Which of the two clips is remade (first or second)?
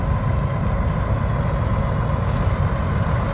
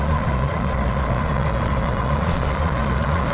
second